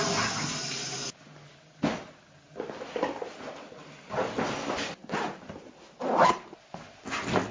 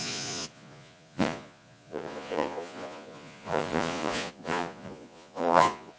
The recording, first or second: first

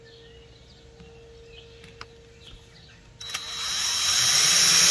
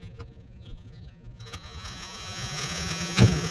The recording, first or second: first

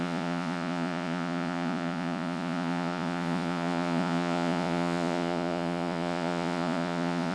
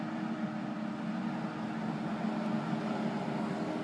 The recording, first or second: second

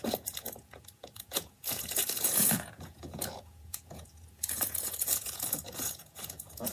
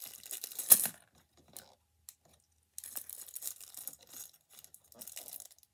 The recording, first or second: second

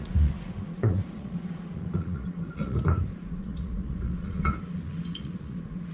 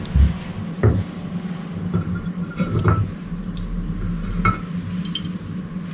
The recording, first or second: second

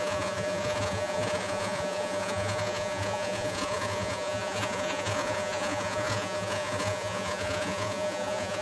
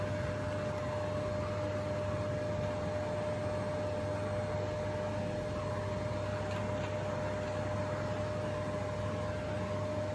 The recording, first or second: second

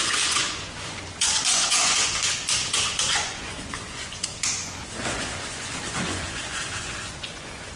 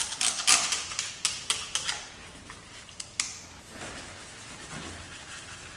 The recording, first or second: second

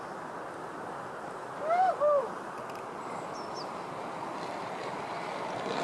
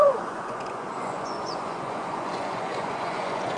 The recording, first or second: first